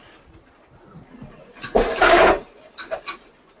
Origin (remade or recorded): recorded